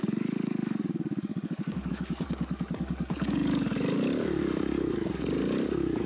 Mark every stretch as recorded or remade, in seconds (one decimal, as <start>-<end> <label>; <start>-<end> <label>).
0.0-6.1 remade